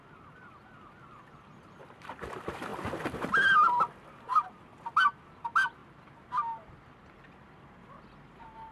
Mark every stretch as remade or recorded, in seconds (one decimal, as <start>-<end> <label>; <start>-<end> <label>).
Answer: 0.0-2.7 recorded; 2.7-3.8 remade; 3.8-4.3 recorded; 4.3-4.8 remade; 4.8-8.7 recorded